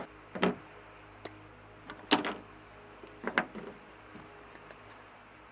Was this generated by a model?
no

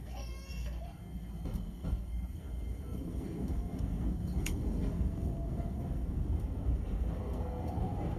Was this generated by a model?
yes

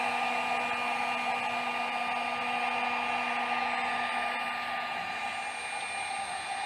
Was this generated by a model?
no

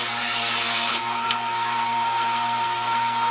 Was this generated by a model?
yes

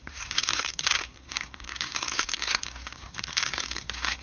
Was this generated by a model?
yes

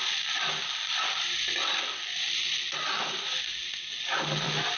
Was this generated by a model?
no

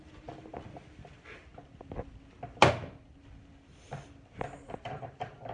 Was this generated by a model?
no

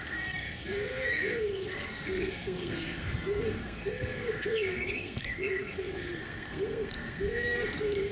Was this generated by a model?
yes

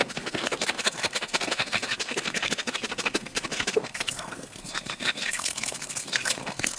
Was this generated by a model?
yes